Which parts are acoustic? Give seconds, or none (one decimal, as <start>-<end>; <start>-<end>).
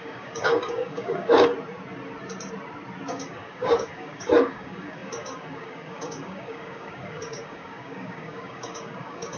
1.5-3.1